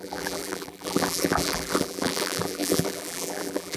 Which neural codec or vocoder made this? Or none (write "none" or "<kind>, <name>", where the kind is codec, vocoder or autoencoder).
vocoder, BigVGAN v2